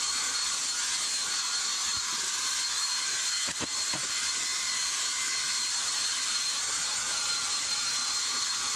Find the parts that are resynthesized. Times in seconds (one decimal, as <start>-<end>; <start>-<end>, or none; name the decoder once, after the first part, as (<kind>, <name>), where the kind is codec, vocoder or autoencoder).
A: 1.9-2.5 (vocoder, BigVGAN v2); 4.5-6.6